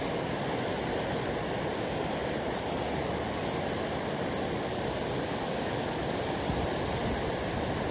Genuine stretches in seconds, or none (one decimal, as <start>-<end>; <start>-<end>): 0.0-7.9